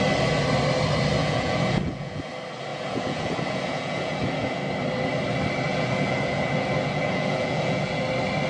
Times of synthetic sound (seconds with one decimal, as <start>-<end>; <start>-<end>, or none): 1.2-2.3; 2.7-4.6; 5.7-8.0